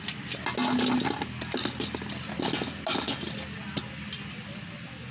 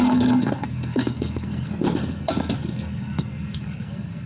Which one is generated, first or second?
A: second